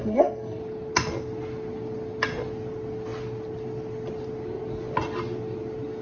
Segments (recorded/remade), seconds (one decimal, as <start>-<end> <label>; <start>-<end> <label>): 0.0-0.6 remade; 0.6-6.0 recorded